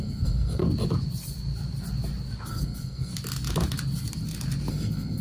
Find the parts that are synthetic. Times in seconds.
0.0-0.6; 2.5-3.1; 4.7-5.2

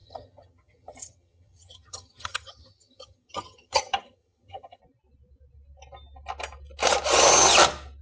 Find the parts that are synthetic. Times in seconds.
0.0-4.8

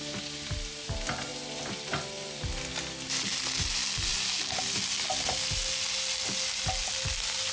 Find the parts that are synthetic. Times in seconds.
none

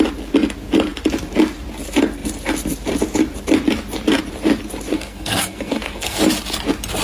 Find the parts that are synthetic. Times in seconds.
4.9-6.2

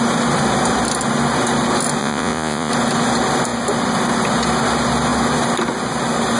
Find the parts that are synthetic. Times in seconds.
2.0-2.7

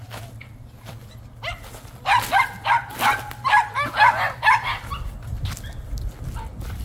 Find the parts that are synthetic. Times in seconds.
none